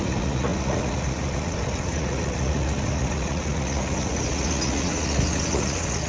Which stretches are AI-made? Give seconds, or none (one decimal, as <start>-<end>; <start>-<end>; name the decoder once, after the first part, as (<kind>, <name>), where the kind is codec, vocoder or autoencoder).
0.0-6.1 (vocoder, Vocos)